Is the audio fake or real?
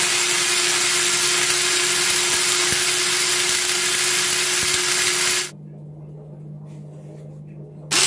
real